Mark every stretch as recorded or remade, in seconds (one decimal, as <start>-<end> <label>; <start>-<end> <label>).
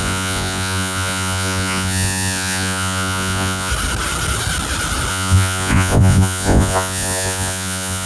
0.0-3.7 remade; 3.7-5.1 recorded; 5.1-8.1 remade